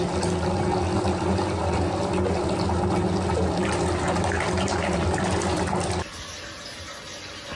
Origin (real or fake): real